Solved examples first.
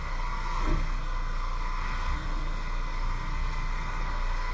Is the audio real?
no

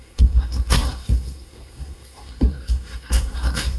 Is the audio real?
no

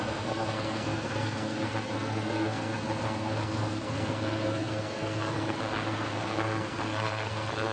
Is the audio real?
no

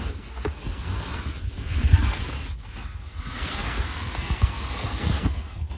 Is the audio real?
no